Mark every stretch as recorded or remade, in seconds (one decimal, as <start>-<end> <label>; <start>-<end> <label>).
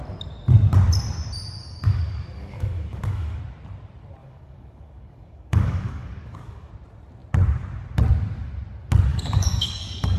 0.0-1.6 recorded; 1.6-3.4 remade; 3.4-4.2 recorded; 4.2-6.7 remade; 6.7-9.1 recorded; 9.1-10.2 remade